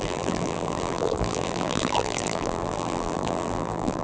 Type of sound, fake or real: fake